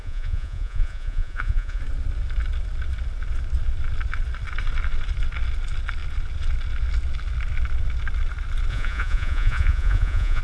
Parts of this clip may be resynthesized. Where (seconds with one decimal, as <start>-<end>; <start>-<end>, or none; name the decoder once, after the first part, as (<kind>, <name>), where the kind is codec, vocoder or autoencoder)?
0.0-1.8 (vocoder, Vocos); 8.7-10.4